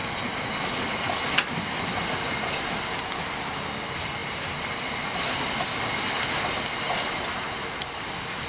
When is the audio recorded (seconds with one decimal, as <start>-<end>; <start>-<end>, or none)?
0.0-8.5

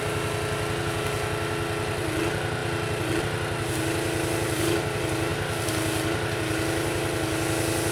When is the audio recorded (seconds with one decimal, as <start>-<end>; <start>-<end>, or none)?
0.0-7.9

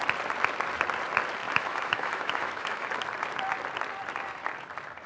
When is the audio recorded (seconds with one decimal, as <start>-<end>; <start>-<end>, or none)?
0.0-1.4; 2.9-5.1

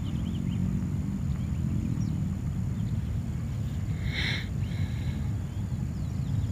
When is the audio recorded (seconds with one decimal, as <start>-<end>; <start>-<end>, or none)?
0.0-6.5

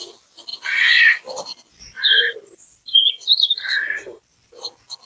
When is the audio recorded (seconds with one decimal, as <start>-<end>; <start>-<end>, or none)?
0.0-3.6; 4.2-5.1

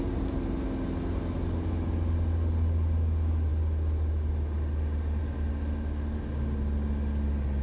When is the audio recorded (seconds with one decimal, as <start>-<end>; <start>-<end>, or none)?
0.0-7.6

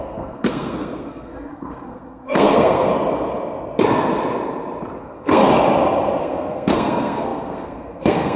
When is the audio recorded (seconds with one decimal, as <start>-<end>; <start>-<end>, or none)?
2.9-5.0; 5.4-6.2